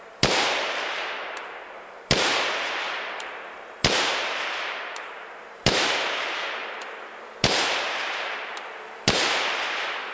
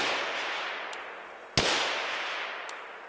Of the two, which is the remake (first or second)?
first